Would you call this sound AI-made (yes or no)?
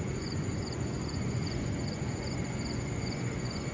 yes